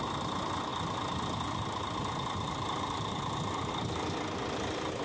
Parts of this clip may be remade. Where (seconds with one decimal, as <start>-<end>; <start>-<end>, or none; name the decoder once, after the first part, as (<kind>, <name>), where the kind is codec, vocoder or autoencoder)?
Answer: none